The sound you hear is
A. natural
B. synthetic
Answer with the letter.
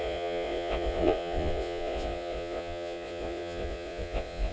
B